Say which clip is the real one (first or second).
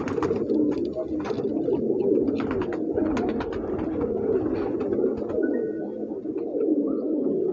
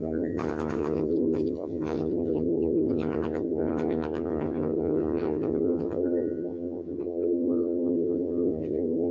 first